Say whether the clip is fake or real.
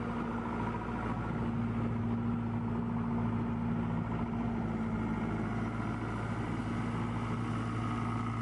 real